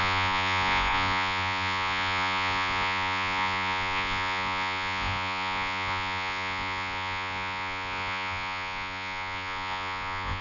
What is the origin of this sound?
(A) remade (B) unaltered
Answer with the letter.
A